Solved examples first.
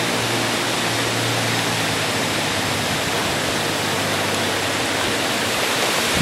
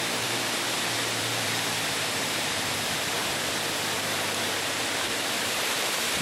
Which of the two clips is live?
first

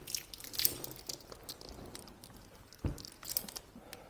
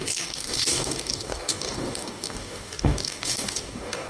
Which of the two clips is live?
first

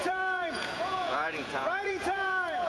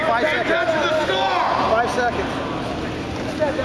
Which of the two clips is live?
second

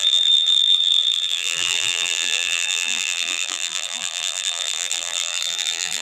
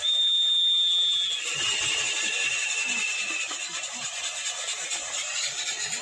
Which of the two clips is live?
second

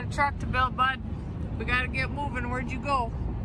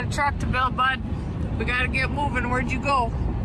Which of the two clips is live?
first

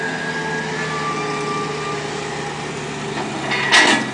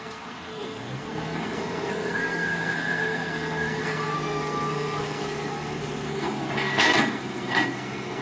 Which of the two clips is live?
first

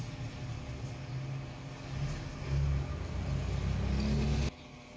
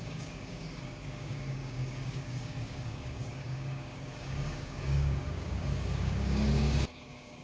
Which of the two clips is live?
first